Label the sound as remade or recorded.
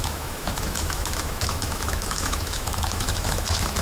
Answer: remade